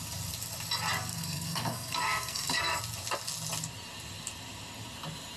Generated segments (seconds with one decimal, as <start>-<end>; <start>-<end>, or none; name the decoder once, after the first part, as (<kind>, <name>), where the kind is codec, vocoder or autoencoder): 1.1-2.8 (codec, SNAC)